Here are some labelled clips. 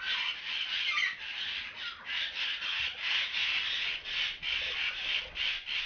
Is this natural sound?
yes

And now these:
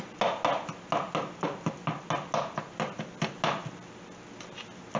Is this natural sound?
yes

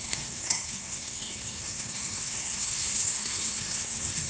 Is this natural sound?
no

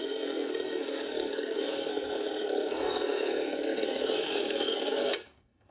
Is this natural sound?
no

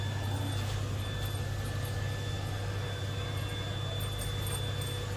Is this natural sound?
yes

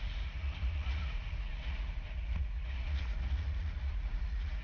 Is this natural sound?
no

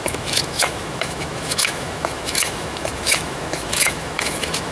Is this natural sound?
no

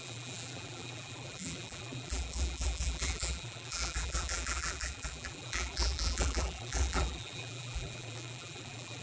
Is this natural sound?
no